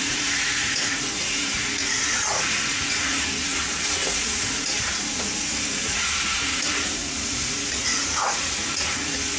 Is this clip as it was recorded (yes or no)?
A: no